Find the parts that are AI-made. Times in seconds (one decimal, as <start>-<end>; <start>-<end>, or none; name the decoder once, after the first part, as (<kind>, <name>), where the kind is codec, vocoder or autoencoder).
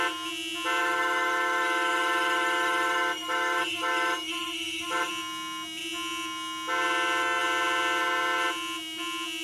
0.8-5.1 (autoencoder, DAC-VAE)